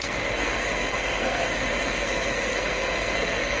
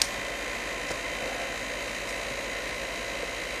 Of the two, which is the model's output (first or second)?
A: first